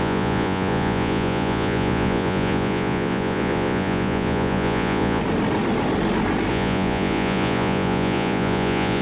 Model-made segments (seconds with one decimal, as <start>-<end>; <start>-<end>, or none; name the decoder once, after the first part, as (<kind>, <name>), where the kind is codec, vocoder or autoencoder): 0.0-5.2 (vocoder, Vocos); 6.5-9.0